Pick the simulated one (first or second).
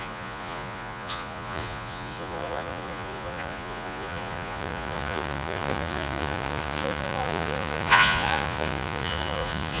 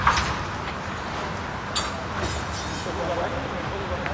first